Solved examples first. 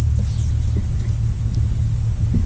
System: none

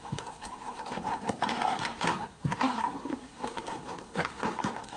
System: codec, SNAC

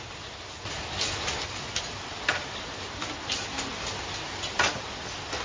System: none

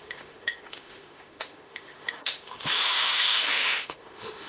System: autoencoder, DAC-VAE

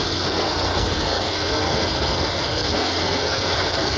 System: codec, SNAC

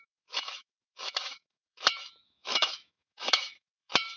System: autoencoder, DAC-VAE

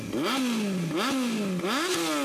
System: none